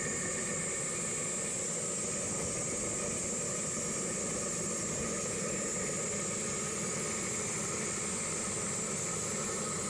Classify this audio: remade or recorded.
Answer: recorded